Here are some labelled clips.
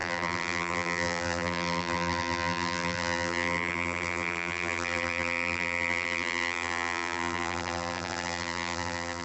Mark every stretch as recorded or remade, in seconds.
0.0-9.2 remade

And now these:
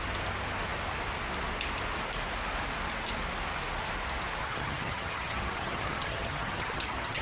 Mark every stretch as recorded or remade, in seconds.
0.0-4.4 recorded; 4.4-7.2 remade

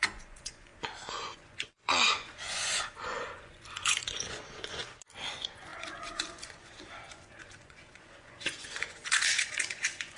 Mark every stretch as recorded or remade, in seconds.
0.0-4.8 remade; 4.8-5.3 recorded; 5.3-10.2 remade